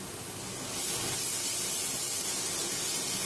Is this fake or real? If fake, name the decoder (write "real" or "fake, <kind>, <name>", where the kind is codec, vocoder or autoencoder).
real